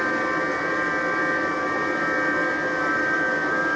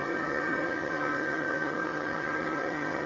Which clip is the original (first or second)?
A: first